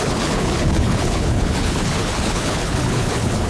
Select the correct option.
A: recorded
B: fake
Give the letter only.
B